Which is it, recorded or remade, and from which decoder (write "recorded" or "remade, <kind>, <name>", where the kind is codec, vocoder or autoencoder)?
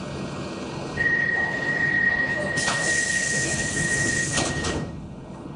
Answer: remade, codec, HILCodec